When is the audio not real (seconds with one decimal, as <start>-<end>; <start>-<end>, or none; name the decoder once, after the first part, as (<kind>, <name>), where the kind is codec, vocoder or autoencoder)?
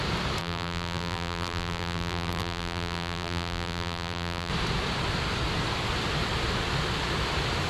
0.4-4.5 (vocoder, BigVGAN v2)